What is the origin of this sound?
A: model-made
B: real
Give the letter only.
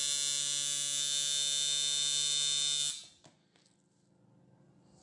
B